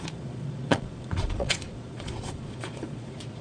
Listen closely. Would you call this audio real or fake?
fake